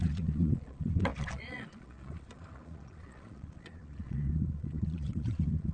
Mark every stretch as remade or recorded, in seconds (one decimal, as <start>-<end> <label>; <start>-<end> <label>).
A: 0.0-5.7 remade